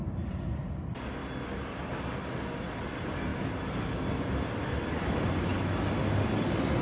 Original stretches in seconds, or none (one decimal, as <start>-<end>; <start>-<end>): 0.0-6.8